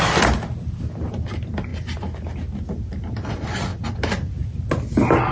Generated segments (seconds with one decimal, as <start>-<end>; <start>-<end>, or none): none